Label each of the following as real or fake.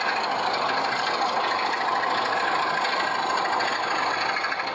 real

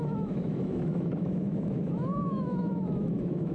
fake